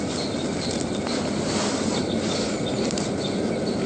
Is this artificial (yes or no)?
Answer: no